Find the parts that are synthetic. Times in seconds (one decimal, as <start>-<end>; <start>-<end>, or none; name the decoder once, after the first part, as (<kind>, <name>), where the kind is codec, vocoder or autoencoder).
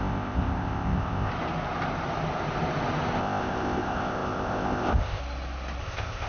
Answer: 0.0-1.3 (codec, ZipCodec); 3.2-5.2; 5.8-6.3